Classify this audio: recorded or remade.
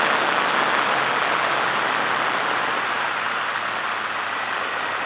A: recorded